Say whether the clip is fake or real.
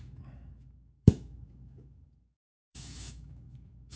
fake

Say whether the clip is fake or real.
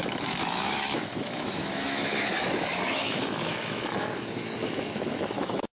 fake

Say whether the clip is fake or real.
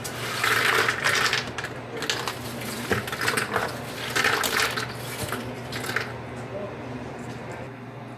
real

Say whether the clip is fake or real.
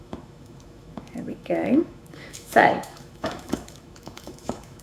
fake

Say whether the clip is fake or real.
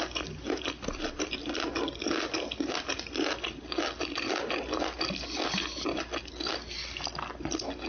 real